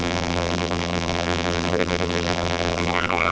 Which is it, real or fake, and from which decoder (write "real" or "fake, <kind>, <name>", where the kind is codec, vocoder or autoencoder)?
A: fake, vocoder, BigVGAN v2